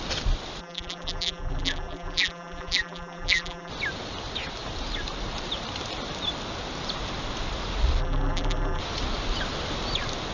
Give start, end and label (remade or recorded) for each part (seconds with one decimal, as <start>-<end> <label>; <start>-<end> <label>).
0.0-0.6 recorded; 0.6-3.7 remade; 3.7-8.0 recorded; 8.0-8.8 remade; 8.8-10.3 recorded